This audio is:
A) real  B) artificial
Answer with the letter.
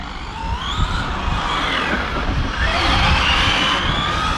A